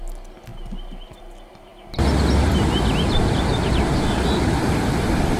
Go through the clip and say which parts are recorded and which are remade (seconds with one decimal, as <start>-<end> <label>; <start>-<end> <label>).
0.0-5.4 recorded